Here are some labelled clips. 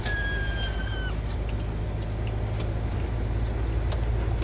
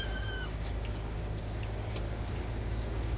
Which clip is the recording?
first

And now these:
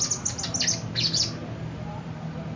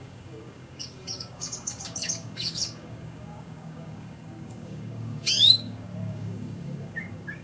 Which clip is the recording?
first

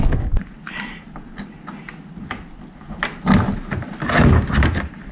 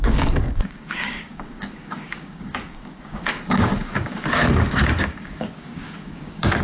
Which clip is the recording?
first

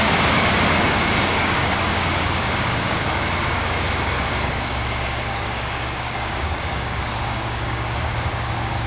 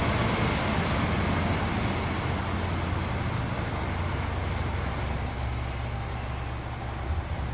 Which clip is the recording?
second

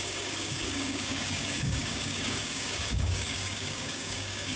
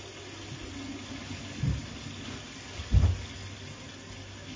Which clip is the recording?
second